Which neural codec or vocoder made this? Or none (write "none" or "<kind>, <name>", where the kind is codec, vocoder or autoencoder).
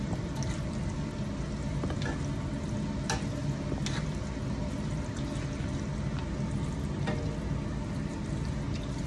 none